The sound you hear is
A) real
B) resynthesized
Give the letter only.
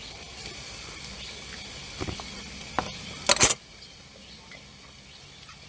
A